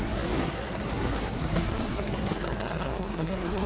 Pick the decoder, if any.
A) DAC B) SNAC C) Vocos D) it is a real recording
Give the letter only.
B